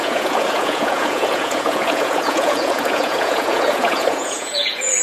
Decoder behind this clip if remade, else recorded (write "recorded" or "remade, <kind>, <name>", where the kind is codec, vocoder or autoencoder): remade, vocoder, Vocos